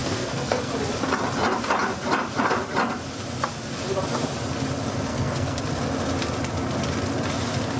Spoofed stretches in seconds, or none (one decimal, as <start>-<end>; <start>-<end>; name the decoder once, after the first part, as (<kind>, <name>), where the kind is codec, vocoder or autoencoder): 0.0-0.7 (codec, SNAC); 5.1-5.6